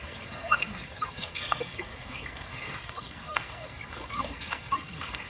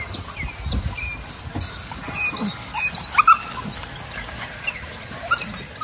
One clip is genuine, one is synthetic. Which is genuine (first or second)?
second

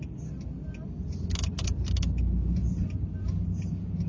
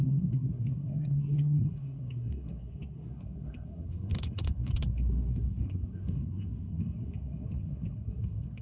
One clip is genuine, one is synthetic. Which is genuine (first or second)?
first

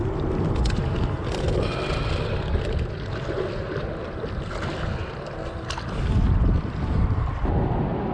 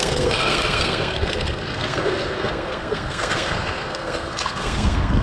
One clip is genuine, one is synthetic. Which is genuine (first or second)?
first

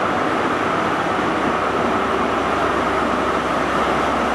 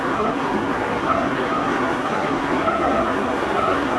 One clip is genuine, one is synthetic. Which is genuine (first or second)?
first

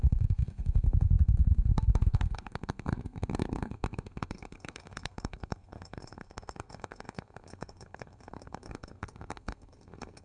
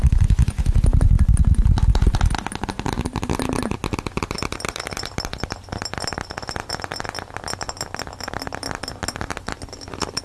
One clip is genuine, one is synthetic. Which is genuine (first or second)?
second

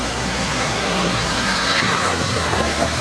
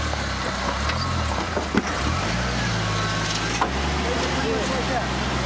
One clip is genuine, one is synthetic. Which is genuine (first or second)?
second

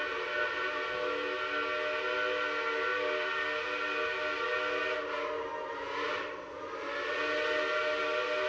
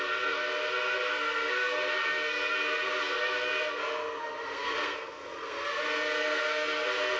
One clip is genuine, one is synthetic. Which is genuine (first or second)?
first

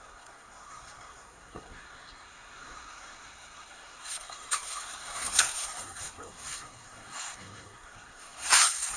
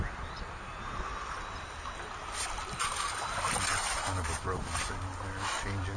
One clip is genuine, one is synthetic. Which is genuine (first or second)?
second